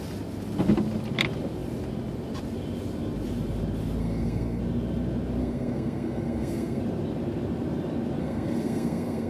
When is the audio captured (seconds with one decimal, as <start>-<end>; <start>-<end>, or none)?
0.0-4.0; 4.6-5.4; 6.8-8.2